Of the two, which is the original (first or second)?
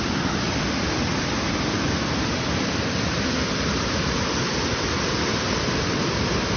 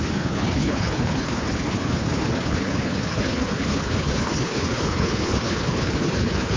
first